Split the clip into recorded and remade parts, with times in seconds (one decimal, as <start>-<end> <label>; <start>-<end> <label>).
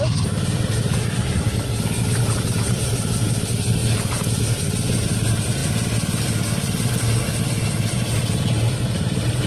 0.0-9.5 recorded